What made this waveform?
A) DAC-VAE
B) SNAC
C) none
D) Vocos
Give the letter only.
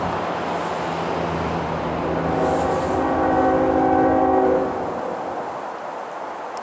C